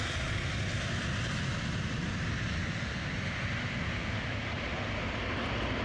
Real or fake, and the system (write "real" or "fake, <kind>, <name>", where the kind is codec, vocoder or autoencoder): real